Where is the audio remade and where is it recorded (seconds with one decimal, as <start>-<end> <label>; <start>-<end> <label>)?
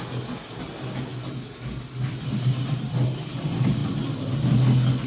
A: 0.0-5.1 recorded